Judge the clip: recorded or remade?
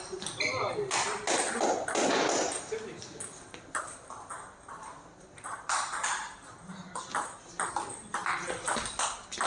recorded